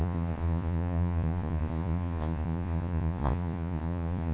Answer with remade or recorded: remade